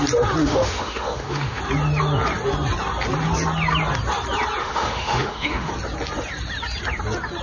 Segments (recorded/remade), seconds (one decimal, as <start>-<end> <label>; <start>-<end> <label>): 0.0-0.4 recorded; 0.4-1.6 remade; 1.6-4.6 recorded; 4.6-5.7 remade; 5.7-7.4 recorded